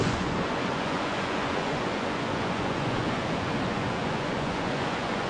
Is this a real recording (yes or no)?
no